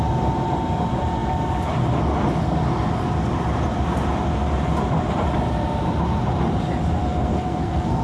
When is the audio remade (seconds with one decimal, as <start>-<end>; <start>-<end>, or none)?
7.0-8.0